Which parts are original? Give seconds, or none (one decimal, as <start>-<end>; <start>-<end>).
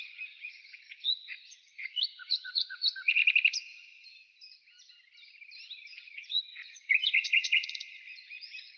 3.2-5.8